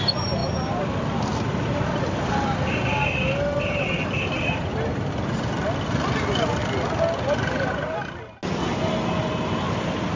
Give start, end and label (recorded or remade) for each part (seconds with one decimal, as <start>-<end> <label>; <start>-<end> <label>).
0.0-4.7 recorded; 4.7-5.3 remade; 5.3-10.2 recorded